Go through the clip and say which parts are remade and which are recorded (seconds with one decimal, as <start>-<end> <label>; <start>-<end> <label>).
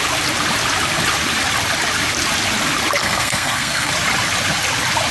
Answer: 0.0-3.0 recorded; 3.0-3.9 remade; 3.9-5.1 recorded